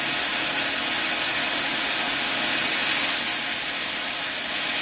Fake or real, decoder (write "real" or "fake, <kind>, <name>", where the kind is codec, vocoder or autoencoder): real